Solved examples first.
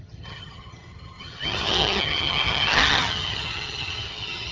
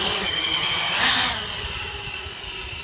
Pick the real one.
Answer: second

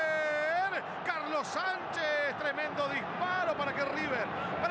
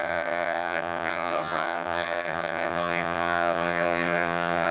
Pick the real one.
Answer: first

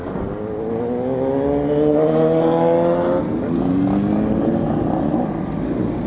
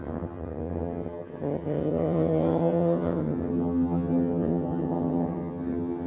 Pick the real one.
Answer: first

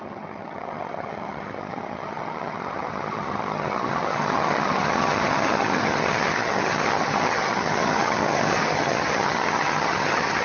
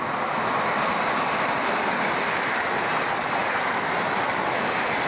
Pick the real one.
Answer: second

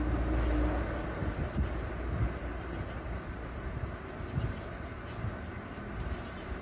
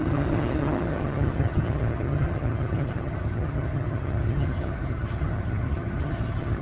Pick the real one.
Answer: first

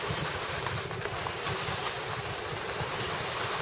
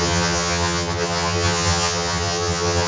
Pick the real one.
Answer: first